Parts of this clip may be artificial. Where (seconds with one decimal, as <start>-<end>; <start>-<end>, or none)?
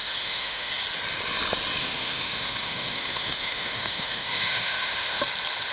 0.0-0.7; 1.8-5.2